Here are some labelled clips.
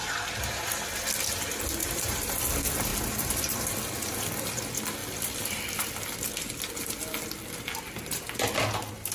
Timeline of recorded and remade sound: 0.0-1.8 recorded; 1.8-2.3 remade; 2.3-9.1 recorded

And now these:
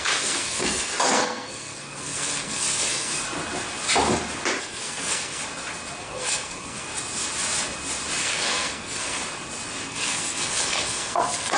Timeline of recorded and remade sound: 0.0-3.1 remade; 3.1-4.6 recorded; 4.6-5.4 remade; 5.4-6.0 recorded; 6.0-6.9 remade; 6.9-8.2 recorded; 8.2-9.2 remade; 9.2-9.9 recorded; 9.9-11.6 remade

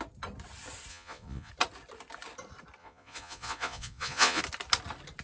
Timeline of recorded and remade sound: 0.0-0.9 recorded; 0.9-1.5 remade; 1.5-2.8 recorded; 2.8-4.4 remade; 4.4-5.2 recorded

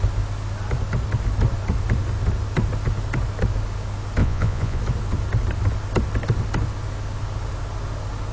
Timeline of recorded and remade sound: 0.0-4.2 recorded; 4.2-4.8 remade; 4.8-8.3 recorded

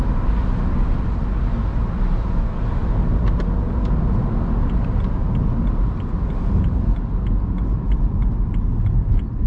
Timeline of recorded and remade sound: 0.0-9.5 recorded

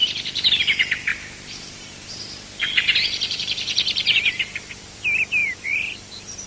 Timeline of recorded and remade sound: 0.0-0.6 remade; 0.6-1.1 recorded; 1.1-5.0 remade; 5.0-5.4 recorded; 5.4-6.5 remade

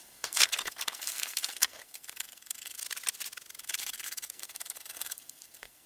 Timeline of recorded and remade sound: 0.0-2.8 remade; 2.8-3.6 recorded; 3.6-5.9 remade

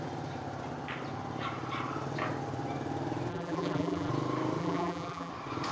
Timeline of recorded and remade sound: 0.0-3.3 recorded; 3.3-4.1 remade; 4.1-4.6 recorded; 4.6-5.3 remade; 5.3-5.7 recorded